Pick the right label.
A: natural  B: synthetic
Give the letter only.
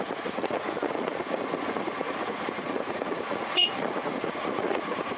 B